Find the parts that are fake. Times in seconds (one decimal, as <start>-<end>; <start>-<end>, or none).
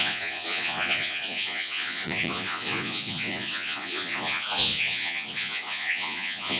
0.0-6.6